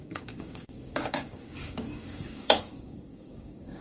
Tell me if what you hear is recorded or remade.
remade